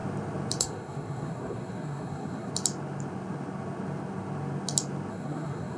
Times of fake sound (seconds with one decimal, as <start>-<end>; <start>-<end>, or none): 0.6-2.5; 5.1-5.8